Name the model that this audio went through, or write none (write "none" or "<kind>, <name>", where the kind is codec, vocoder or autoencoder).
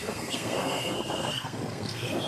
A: codec, SNAC